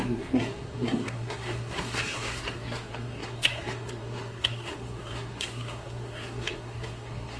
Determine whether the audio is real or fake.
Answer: fake